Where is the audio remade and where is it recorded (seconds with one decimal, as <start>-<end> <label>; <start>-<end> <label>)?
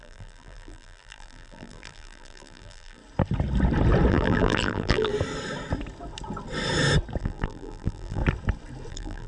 0.0-3.0 remade; 3.0-4.1 recorded; 4.1-5.1 remade; 5.1-7.2 recorded; 7.2-8.2 remade; 8.2-8.9 recorded; 8.9-9.3 remade